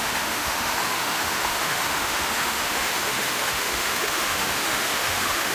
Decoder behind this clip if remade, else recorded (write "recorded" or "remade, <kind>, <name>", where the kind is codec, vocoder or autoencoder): remade, autoencoder, DAC-VAE